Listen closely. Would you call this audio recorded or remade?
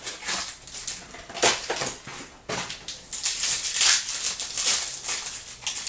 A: recorded